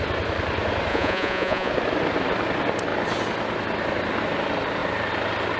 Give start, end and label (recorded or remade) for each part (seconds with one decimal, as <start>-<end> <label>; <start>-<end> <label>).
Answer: 0.0-0.9 recorded; 0.9-1.7 remade; 1.7-5.6 recorded